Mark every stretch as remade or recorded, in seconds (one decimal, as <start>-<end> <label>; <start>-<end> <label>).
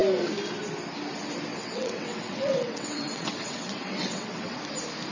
0.0-1.5 recorded; 1.5-4.6 remade; 4.6-5.1 recorded